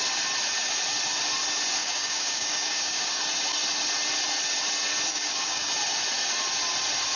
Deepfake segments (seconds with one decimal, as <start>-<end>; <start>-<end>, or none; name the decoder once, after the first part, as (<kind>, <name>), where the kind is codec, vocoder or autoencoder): 1.8-3.2 (codec, DAC); 5.1-5.7